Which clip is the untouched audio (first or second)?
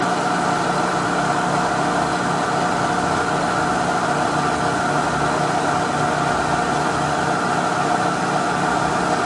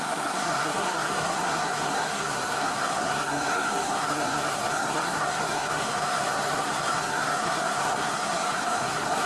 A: first